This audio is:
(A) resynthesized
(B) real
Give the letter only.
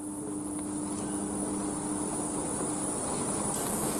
B